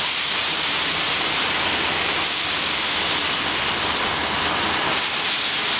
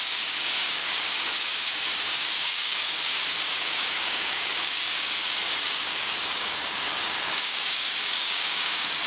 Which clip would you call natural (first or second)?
first